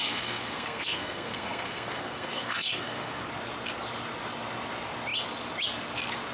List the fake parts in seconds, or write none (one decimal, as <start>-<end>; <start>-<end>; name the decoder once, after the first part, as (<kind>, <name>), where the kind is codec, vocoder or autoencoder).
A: 0.0-3.2 (codec, SNAC)